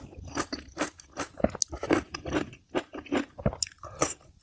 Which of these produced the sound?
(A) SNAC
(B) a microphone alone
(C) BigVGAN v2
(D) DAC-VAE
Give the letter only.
B